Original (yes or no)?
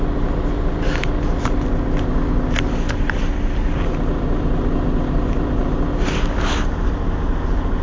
yes